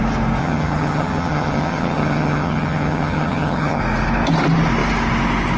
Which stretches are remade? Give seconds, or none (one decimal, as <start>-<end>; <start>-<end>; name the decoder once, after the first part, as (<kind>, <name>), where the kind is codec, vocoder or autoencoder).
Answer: 0.4-3.8 (vocoder, HiFi-GAN)